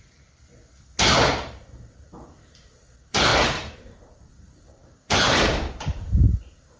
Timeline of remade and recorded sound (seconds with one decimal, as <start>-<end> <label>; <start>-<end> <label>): 0.0-0.5 remade; 0.5-1.9 recorded; 1.9-6.8 remade